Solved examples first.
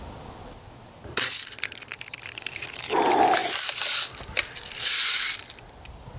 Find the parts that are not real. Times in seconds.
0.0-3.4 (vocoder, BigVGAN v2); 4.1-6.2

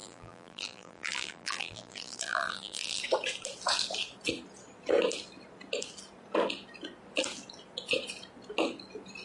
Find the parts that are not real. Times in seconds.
0.0-3.0 (vocoder, BigVGAN v2)

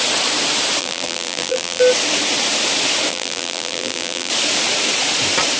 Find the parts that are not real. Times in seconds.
0.8-1.8 (vocoder, BigVGAN v2); 3.1-4.3

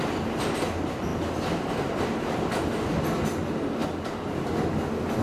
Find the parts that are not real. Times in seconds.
none

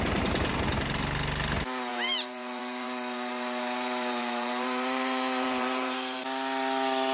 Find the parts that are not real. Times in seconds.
1.9-6.2 (vocoder, BigVGAN v2)

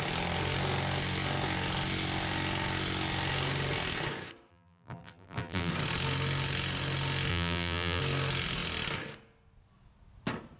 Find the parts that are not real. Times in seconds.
4.5-5.7 (vocoder, BigVGAN v2); 7.3-8.0